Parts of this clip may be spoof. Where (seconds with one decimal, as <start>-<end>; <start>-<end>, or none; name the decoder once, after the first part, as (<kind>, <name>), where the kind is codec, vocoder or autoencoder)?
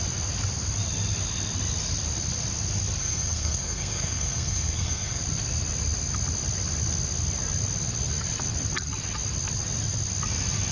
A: 3.0-5.2 (codec, SNAC)